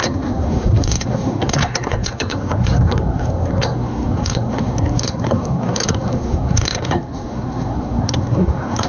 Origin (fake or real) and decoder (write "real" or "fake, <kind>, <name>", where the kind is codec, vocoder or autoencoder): fake, codec, SNAC